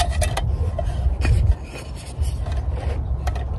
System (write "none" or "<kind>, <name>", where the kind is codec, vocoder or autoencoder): none